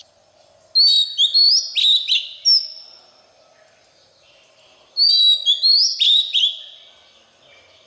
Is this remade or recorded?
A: recorded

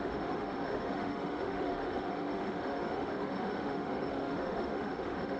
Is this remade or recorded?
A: remade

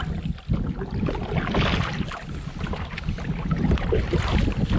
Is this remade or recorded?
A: recorded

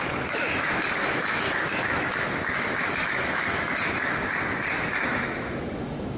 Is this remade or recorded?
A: remade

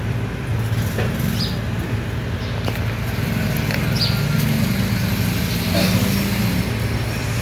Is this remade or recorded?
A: recorded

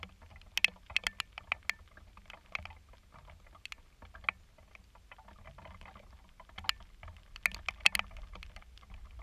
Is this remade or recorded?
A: recorded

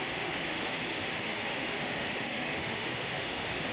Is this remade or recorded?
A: remade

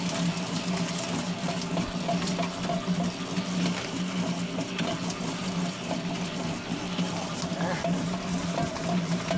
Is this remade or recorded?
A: recorded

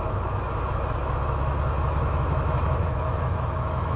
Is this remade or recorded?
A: remade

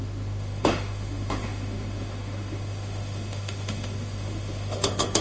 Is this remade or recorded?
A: remade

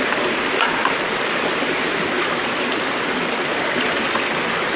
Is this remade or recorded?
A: recorded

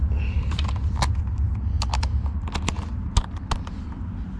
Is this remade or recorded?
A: recorded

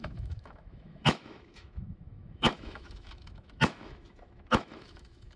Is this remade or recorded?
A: remade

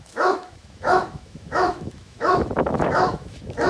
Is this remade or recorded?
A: remade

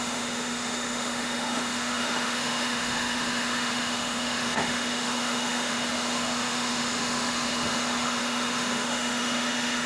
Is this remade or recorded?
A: remade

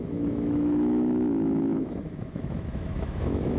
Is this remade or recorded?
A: remade